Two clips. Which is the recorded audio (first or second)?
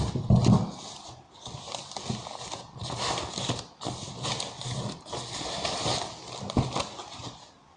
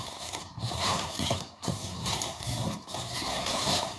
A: first